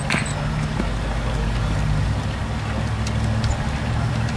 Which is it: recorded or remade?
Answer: recorded